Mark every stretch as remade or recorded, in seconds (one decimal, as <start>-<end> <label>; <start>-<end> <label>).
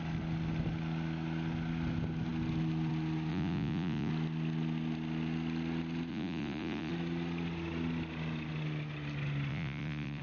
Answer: 0.0-3.3 recorded; 3.3-4.1 remade; 4.1-6.1 recorded; 6.1-6.9 remade; 6.9-9.5 recorded; 9.5-10.2 remade